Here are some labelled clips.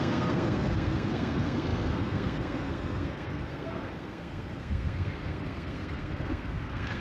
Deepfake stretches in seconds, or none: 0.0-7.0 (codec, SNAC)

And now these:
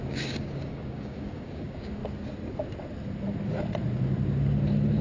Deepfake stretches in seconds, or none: 0.0-2.0 (codec, DAC)